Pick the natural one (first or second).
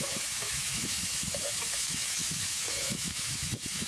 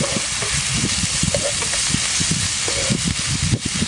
second